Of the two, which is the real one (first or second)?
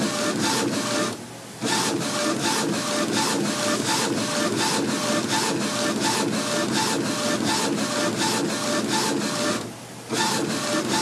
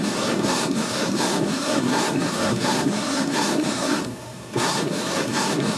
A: first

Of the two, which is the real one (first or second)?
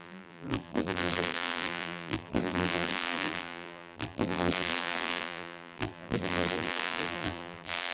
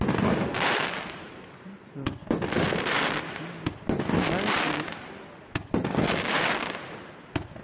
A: second